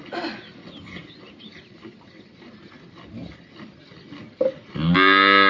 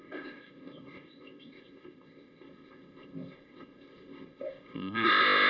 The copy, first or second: second